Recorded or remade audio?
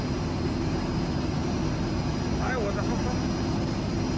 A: recorded